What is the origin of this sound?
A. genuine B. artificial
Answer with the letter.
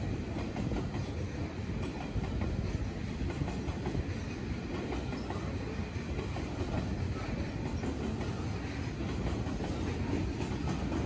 A